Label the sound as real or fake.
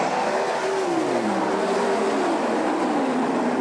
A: real